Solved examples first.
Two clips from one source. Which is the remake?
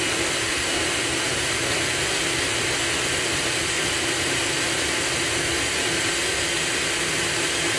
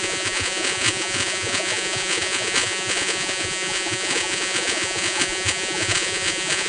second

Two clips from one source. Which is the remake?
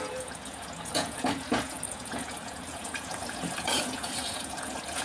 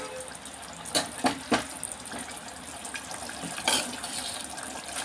first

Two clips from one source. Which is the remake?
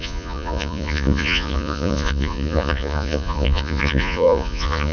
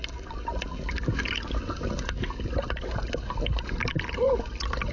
first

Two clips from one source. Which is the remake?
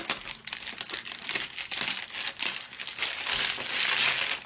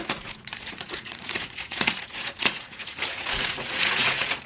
second